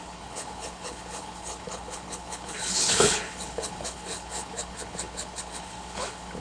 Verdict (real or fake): fake